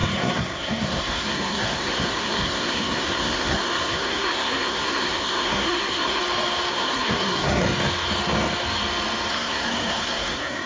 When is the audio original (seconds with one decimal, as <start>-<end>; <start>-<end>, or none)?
6.2-6.7; 7.6-9.3